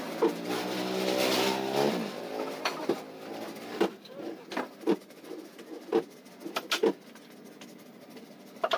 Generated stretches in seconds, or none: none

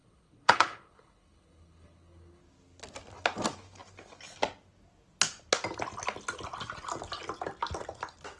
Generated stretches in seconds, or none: 0.0-2.4 (codec, HILCodec)

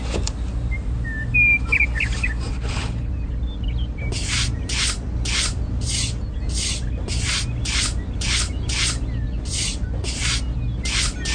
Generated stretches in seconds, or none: 2.5-3.1 (codec, HILCodec)

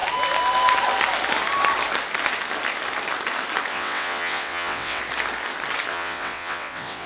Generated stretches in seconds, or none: 3.7-5.0 (vocoder, WaveNeXt); 5.9-7.1

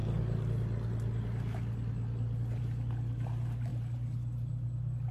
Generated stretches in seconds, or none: none

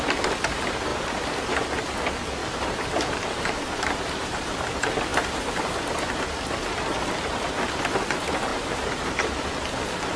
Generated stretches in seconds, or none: 0.9-1.6 (vocoder, BigVGAN v2); 2.4-4.5; 8.5-9.5

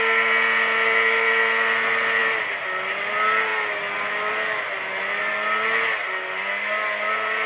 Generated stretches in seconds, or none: none